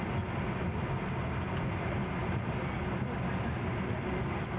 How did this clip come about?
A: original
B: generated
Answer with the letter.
A